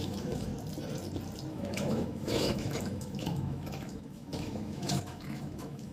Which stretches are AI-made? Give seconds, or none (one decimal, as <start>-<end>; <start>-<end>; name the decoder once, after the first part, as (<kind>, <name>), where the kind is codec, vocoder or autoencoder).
0.0-0.5 (autoencoder, DAC-VAE); 1.5-5.9